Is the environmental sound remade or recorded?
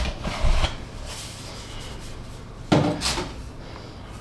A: recorded